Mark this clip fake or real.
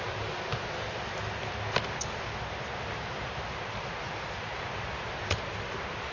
real